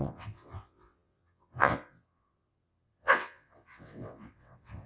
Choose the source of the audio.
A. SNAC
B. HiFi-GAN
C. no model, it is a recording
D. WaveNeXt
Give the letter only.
D